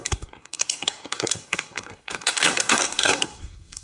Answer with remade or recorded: remade